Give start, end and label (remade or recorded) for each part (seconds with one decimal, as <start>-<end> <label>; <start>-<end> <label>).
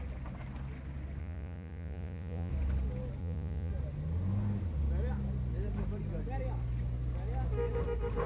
0.0-1.2 recorded; 1.2-2.5 remade; 2.5-3.2 recorded; 3.2-3.7 remade; 3.7-8.3 recorded